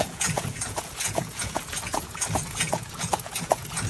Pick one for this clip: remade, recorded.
remade